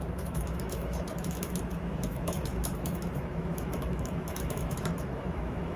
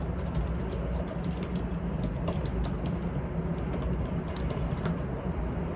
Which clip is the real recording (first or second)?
second